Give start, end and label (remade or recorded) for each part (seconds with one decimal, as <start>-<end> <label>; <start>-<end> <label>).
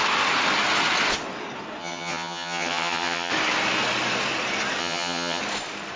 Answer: 0.0-1.8 recorded; 1.8-3.3 remade; 3.3-4.8 recorded; 4.8-5.4 remade; 5.4-6.0 recorded